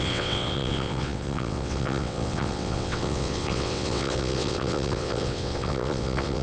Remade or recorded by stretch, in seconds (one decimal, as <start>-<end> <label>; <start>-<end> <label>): 0.0-6.4 remade